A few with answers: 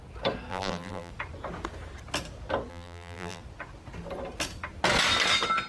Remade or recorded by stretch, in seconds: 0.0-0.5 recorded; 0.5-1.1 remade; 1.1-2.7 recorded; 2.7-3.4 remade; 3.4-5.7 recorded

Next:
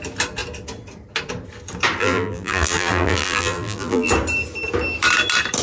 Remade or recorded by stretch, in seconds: 0.0-2.0 recorded; 2.0-4.1 remade; 4.1-5.6 recorded

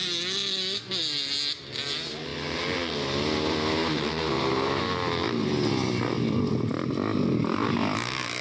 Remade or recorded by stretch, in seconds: 0.0-8.4 recorded

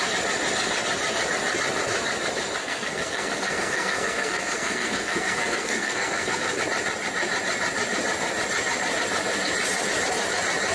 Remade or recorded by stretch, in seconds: 0.0-2.6 recorded; 2.6-6.6 remade; 6.6-10.7 recorded

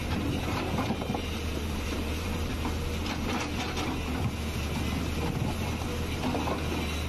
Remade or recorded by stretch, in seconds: 0.0-2.5 remade; 2.5-7.1 recorded

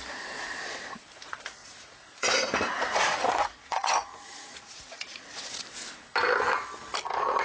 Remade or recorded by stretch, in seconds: 0.0-1.6 recorded; 1.6-5.4 remade; 5.4-7.4 recorded

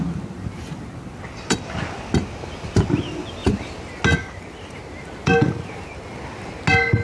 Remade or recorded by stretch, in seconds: 0.0-7.0 recorded

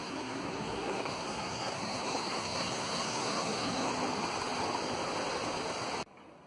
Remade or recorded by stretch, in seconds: 0.0-3.9 remade; 3.9-6.5 recorded